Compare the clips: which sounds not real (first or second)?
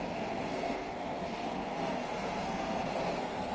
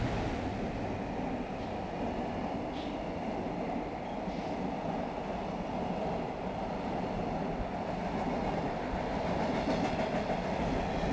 first